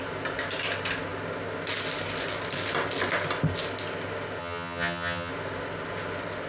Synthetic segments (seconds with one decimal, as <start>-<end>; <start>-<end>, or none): 4.4-5.3